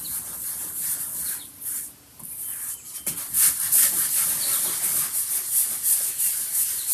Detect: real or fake real